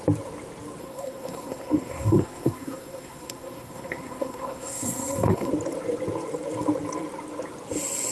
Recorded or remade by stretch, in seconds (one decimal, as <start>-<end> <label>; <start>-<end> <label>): 0.0-0.8 recorded; 0.8-5.5 remade; 5.5-8.1 recorded